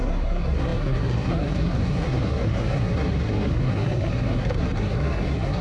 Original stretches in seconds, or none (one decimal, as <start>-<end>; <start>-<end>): none